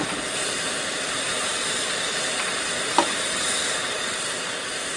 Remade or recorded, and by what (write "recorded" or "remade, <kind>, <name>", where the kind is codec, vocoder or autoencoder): remade, vocoder, BigVGAN v2